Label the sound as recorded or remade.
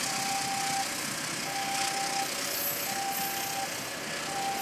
recorded